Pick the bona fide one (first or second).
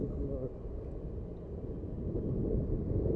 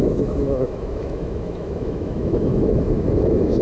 first